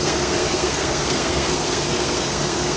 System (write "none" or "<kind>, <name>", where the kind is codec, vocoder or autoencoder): codec, SNAC